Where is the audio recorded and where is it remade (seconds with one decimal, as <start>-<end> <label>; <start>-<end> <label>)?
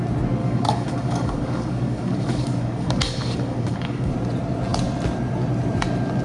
0.0-0.4 recorded; 0.4-4.1 remade; 4.1-6.2 recorded